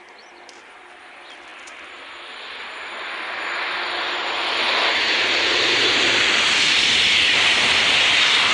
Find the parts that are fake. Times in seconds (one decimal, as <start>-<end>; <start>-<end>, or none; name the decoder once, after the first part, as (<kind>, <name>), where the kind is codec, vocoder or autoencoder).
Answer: none